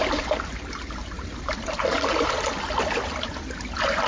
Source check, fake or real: real